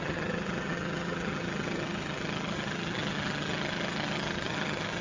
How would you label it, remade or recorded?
remade